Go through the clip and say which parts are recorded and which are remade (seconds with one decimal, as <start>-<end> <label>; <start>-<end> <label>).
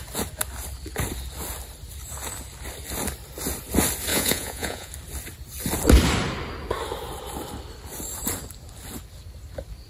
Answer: 0.0-4.1 recorded; 4.1-4.9 remade; 4.9-9.9 recorded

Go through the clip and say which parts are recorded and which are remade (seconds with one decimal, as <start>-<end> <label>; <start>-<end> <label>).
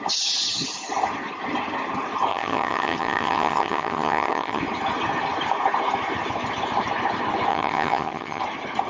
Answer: 0.0-2.3 recorded; 2.3-4.6 remade; 4.6-7.5 recorded; 7.5-8.4 remade; 8.4-8.9 recorded